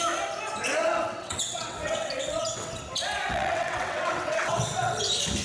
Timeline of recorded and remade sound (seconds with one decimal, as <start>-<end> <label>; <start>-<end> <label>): 0.0-0.8 recorded; 0.8-2.8 remade; 2.8-3.2 recorded; 3.2-5.0 remade; 5.0-5.4 recorded